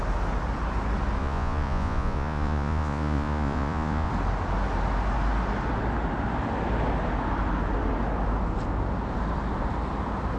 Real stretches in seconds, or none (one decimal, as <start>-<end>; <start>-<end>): 0.0-1.2; 4.1-10.4